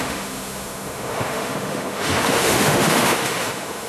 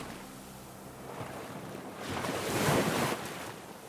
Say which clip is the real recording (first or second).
second